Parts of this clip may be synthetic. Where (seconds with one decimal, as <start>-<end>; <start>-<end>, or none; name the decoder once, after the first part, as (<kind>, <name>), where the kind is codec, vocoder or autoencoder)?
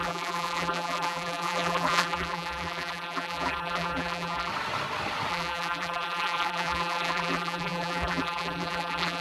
0.0-4.5 (vocoder, BigVGAN v2); 5.3-9.2